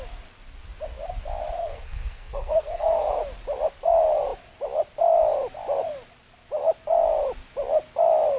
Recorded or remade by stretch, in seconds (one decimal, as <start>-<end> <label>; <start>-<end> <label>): 0.0-1.6 recorded; 1.6-3.2 remade; 3.2-8.4 recorded